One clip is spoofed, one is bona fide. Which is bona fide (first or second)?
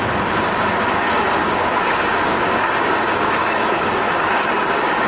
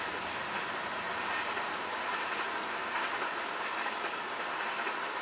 second